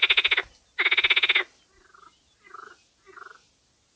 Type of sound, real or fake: real